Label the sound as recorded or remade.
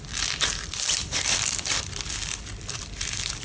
remade